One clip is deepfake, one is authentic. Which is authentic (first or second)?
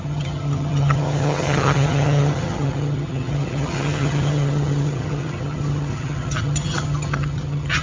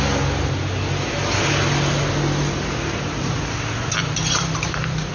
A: second